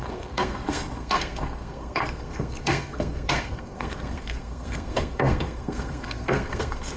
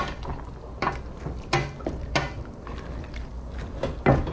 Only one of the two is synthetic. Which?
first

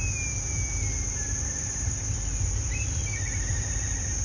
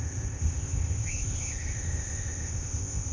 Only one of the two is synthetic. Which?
second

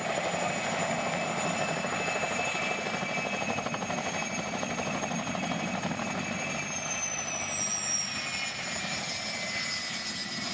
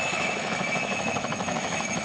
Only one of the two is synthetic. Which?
second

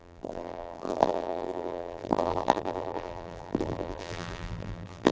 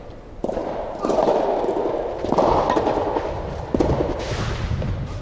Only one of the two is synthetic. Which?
first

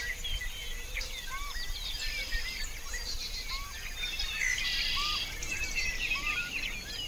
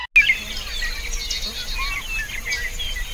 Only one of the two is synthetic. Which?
first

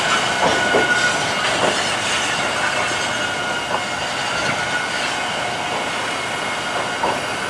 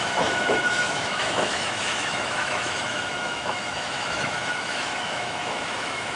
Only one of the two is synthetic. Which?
second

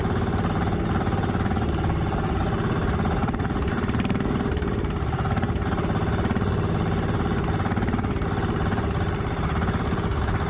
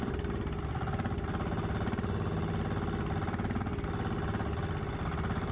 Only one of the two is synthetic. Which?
first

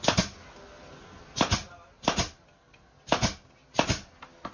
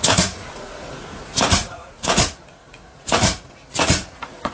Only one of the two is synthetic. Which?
second